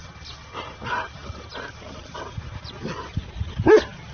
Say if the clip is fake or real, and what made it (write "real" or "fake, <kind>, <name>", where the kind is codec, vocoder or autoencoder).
real